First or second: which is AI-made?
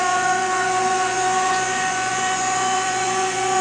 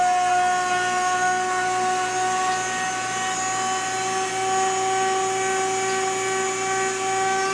first